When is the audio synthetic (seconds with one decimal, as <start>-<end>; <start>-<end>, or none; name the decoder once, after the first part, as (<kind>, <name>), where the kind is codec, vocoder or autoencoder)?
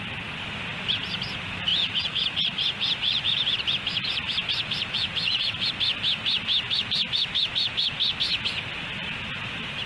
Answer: 1.7-5.7 (vocoder, BigVGAN v2)